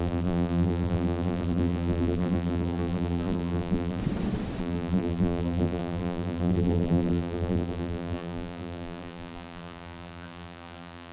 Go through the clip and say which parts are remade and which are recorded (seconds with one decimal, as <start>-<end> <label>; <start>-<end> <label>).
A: 0.0-4.0 remade; 4.0-4.6 recorded; 4.6-11.1 remade

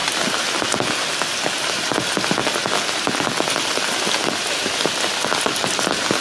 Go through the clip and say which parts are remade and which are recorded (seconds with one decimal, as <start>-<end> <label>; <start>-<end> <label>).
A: 0.0-0.6 remade; 0.6-4.2 recorded; 4.2-5.8 remade; 5.8-6.2 recorded